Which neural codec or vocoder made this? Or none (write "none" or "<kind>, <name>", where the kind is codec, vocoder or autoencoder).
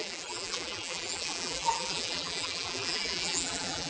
vocoder, BigVGAN v2